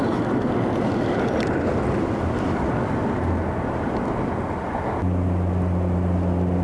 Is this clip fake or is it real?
real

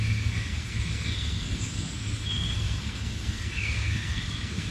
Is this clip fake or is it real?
fake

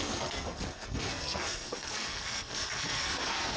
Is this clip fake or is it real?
fake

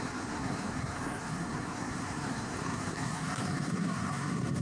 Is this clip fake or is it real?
fake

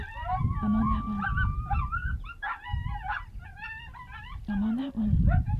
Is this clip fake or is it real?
real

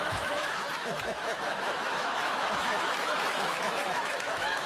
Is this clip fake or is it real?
fake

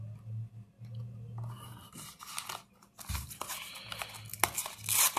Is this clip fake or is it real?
real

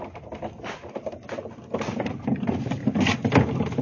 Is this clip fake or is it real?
fake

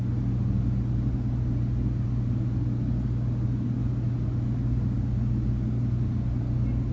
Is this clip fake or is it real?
real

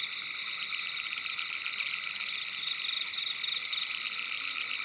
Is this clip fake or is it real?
real